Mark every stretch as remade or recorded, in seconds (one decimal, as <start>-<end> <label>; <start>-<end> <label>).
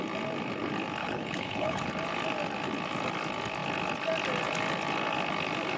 0.0-1.0 recorded; 1.0-1.9 remade; 1.9-5.8 recorded